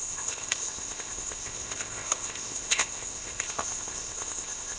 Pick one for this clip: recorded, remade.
remade